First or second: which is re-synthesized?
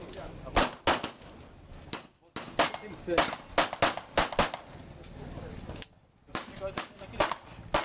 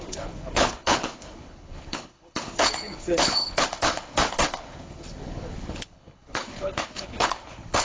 second